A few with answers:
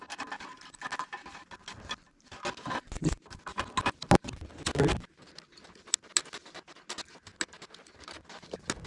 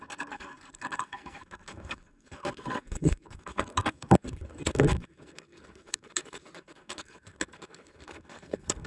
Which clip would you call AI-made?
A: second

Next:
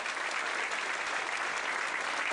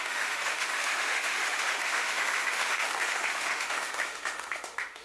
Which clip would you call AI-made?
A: second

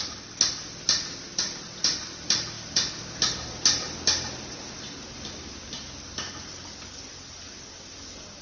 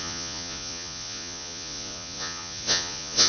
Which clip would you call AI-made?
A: second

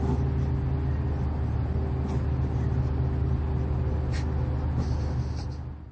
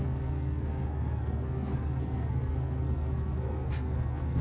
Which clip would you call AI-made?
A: second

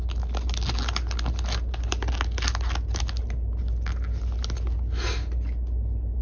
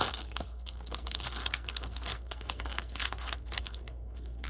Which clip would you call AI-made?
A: second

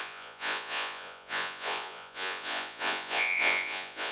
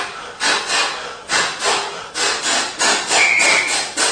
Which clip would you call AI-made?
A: first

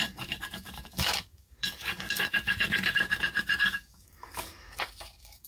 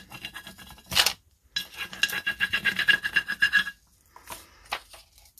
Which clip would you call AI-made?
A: first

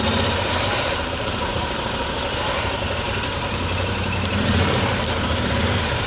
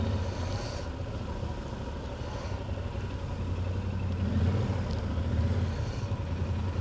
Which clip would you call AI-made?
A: first